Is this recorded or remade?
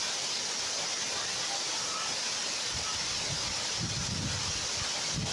recorded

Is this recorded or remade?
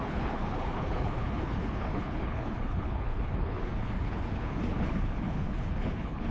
remade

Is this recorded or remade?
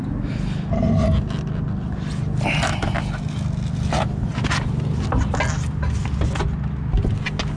recorded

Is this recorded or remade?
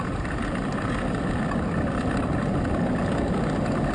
recorded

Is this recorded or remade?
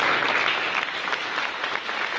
recorded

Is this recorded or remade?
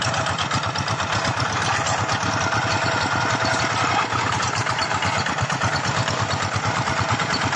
recorded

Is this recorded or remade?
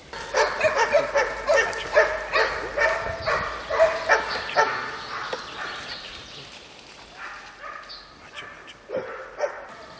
recorded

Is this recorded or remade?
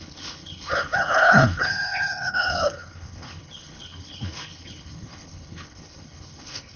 remade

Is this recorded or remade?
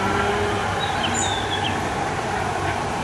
recorded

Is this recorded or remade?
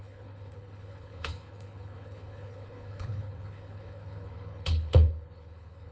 remade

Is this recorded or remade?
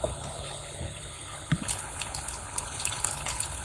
remade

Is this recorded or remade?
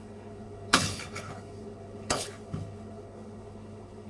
remade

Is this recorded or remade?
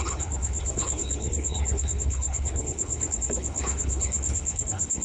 remade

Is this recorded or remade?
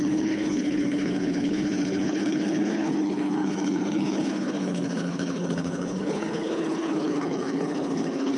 remade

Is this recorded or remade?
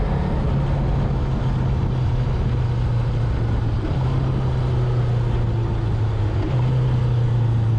recorded